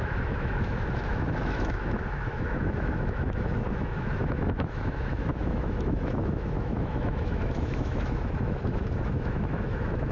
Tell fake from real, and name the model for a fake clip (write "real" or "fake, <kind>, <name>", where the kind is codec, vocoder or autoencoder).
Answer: fake, autoencoder, DAC-VAE